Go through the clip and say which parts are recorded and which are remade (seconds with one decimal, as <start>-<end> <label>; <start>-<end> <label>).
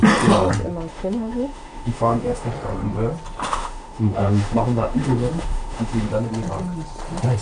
0.0-0.9 recorded; 0.9-2.5 remade; 2.5-3.5 recorded; 3.5-6.1 remade; 6.1-7.4 recorded